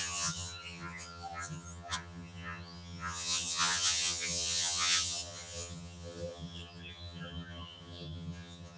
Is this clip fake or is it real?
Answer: fake